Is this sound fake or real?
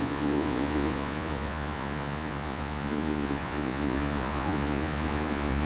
fake